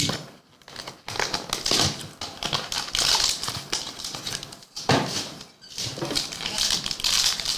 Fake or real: real